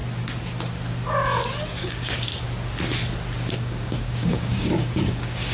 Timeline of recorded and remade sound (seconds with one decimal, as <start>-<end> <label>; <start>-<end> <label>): 0.0-1.8 recorded; 1.8-2.3 remade; 2.3-3.5 recorded; 3.5-5.5 remade